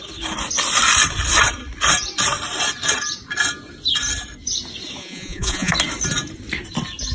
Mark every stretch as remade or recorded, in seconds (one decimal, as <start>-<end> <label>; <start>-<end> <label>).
0.0-5.0 recorded; 5.0-5.7 remade; 5.7-7.1 recorded